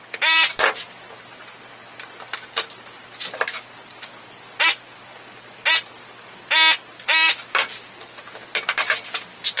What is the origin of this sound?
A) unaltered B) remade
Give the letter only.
A